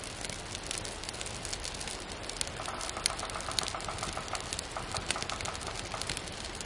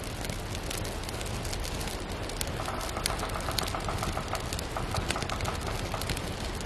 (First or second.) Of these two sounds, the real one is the second